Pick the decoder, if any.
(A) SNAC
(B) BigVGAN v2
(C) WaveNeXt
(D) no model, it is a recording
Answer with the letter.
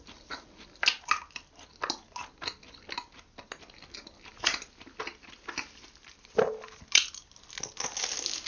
D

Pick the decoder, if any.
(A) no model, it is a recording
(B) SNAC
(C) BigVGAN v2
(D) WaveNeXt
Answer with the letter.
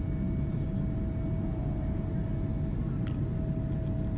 A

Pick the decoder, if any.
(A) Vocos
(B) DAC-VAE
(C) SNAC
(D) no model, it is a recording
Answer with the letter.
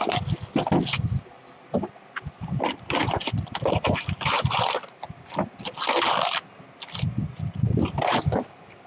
D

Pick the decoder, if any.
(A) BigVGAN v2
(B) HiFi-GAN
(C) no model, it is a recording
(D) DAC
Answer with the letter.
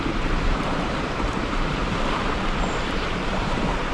A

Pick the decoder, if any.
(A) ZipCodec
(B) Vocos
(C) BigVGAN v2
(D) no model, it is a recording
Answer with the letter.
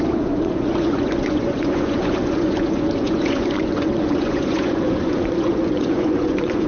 B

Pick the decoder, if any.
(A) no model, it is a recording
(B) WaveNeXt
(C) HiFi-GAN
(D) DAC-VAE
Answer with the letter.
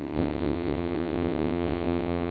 B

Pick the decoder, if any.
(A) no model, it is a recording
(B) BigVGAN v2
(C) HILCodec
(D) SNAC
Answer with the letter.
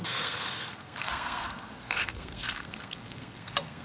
D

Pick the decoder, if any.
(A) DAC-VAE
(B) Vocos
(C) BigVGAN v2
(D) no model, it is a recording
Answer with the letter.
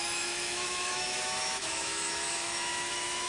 A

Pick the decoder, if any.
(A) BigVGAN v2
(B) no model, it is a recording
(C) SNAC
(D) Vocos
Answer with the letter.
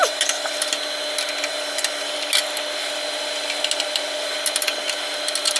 B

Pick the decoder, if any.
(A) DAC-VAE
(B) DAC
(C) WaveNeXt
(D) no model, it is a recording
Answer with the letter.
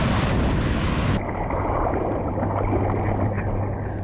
D